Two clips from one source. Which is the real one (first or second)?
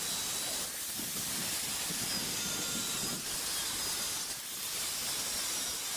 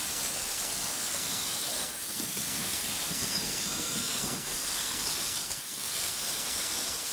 first